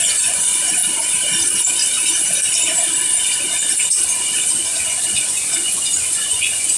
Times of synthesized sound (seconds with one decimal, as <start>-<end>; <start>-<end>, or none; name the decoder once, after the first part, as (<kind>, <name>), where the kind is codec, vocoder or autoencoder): 0.0-0.8 (vocoder, Vocos); 4.2-6.8